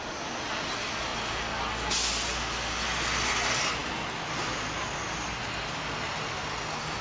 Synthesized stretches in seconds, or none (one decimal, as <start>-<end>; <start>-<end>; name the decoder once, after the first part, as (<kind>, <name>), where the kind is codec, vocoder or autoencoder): none